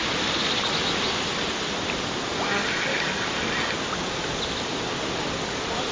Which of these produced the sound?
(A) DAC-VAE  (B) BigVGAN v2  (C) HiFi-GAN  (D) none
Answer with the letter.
D